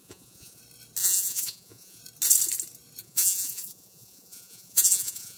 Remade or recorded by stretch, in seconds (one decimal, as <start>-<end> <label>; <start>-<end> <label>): 0.0-0.6 remade; 0.6-1.0 recorded; 1.0-2.0 remade; 2.0-3.0 recorded; 3.0-5.4 remade